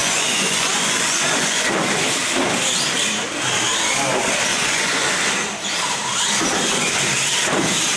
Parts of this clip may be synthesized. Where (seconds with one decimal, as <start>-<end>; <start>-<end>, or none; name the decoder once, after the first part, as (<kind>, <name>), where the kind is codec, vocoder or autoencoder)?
0.0-1.7 (vocoder, Vocos); 4.5-5.1